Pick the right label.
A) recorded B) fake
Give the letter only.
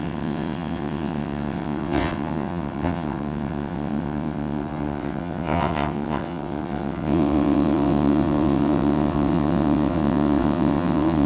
B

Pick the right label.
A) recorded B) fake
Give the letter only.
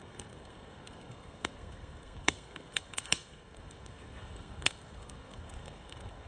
B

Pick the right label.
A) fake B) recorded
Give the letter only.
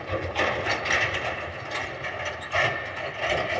B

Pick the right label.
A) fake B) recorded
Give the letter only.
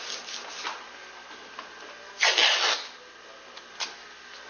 B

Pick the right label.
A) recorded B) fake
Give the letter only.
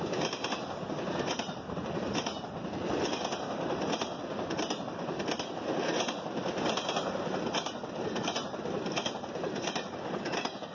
A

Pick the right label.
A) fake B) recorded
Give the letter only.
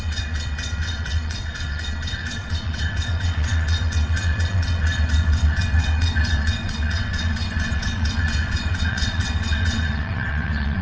A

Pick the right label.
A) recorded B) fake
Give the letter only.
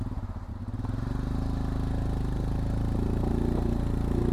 A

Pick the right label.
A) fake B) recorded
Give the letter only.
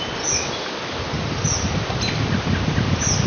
B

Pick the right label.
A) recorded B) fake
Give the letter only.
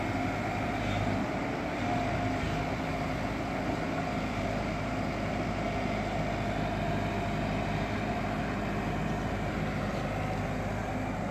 A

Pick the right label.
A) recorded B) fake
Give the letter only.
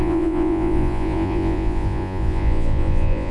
B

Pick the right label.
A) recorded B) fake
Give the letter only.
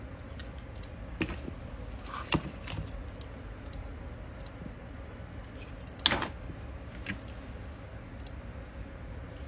A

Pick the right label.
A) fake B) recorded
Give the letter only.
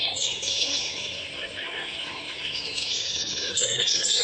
A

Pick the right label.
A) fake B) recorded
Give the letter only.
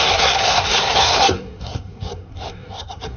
A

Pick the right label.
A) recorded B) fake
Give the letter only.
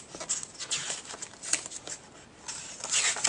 A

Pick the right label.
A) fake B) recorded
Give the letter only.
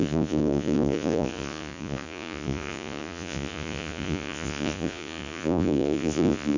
A